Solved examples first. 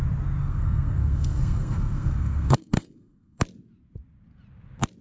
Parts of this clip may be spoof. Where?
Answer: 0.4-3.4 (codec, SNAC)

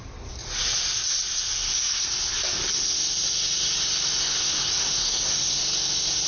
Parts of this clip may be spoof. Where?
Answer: 4.2-5.6 (codec, SNAC)

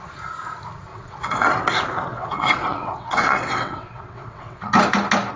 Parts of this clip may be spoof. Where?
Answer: 0.9-1.5 (vocoder, WaveNeXt); 2.1-4.7

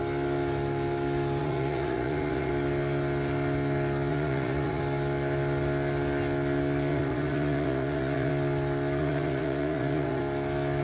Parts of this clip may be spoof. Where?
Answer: 1.4-2.5 (vocoder, Vocos); 4.1-4.8; 6.9-8.3; 9.0-10.2